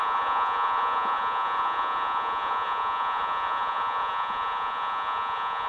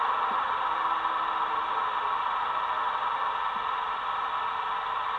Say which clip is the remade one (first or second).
first